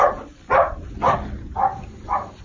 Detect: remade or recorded recorded